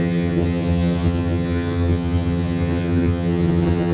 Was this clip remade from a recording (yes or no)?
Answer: yes